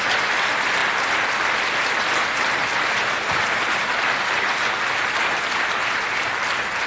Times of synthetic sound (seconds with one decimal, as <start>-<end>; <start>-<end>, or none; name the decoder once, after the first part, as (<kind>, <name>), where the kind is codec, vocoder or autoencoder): none